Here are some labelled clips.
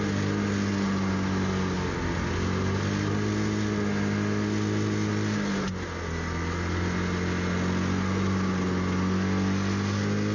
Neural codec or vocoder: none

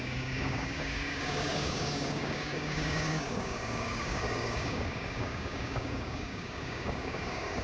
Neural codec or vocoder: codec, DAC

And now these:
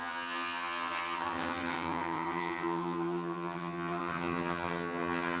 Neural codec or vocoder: vocoder, HiFi-GAN